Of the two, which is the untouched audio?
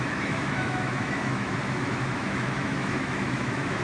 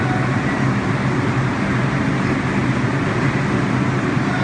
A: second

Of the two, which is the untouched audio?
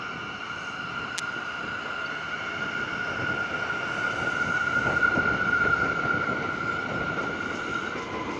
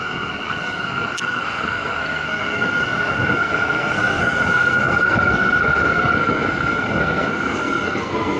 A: first